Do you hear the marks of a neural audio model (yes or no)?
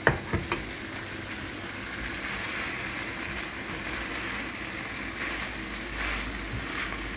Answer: no